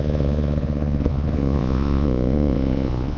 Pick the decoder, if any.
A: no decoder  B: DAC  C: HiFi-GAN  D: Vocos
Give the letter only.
D